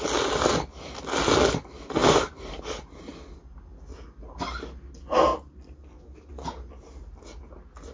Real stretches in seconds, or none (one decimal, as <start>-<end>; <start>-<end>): 0.0-2.0; 2.6-7.9